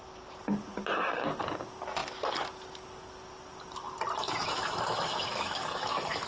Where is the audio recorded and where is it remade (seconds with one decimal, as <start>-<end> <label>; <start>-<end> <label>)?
0.0-4.2 recorded; 4.2-6.3 remade

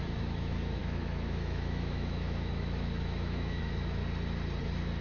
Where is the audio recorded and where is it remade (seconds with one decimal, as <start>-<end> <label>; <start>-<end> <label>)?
0.0-4.0 remade; 4.0-5.0 recorded

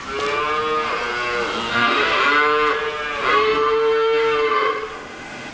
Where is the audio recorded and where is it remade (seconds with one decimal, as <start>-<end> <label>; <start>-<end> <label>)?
0.0-1.7 recorded; 1.7-2.2 remade; 2.2-3.3 recorded; 3.3-5.5 remade

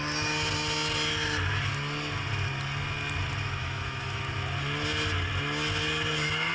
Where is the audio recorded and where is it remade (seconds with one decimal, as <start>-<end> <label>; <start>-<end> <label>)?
0.0-3.6 recorded; 3.6-4.2 remade; 4.2-6.5 recorded

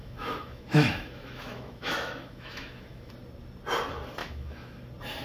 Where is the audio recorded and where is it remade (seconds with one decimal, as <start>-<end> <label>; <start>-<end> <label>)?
0.0-3.1 remade; 3.1-4.2 recorded; 4.2-4.8 remade; 4.8-5.2 recorded

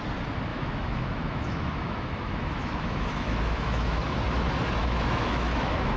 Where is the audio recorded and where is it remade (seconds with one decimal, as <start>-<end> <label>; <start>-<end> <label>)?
0.0-0.5 recorded; 0.5-4.0 remade; 4.0-4.8 recorded; 4.8-6.0 remade

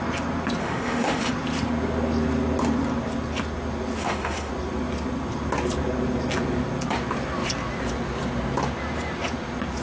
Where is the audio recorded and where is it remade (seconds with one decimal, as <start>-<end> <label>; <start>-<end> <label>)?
0.0-0.6 recorded; 0.6-1.3 remade; 1.3-4.0 recorded; 4.0-4.5 remade; 4.5-9.8 recorded